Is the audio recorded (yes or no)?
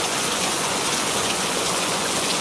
no